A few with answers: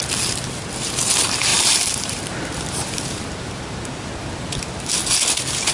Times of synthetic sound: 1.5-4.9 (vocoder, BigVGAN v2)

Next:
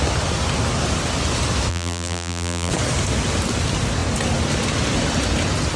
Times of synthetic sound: 1.7-2.7 (vocoder, BigVGAN v2)

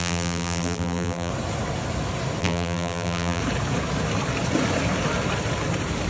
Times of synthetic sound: 0.0-1.3 (vocoder, BigVGAN v2); 2.4-3.4